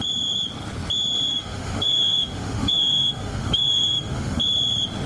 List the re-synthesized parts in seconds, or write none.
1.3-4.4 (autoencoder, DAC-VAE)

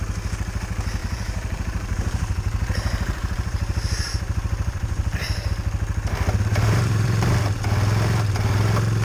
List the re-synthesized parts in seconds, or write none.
1.0-5.5 (vocoder, BigVGAN v2); 6.5-7.3

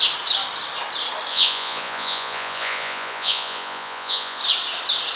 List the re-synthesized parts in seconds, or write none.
1.3-4.4 (vocoder, Vocos)

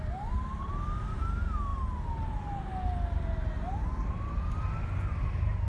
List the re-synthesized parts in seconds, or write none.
none

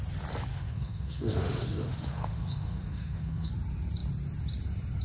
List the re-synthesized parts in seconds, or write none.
0.5-3.5 (autoencoder, DAC-VAE)

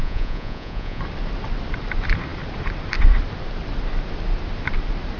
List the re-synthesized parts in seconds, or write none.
0.0-1.0 (vocoder, Vocos)

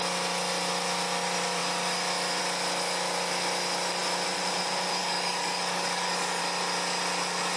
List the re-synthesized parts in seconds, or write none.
5.0-6.4 (codec, DAC)

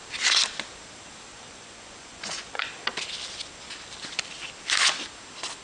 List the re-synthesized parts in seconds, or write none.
1.3-2.7 (vocoder, Vocos)